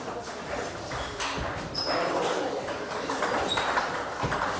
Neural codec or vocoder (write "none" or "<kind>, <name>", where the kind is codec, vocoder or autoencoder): none